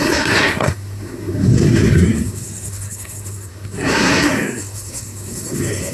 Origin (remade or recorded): remade